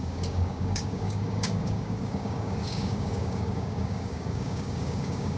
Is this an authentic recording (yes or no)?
no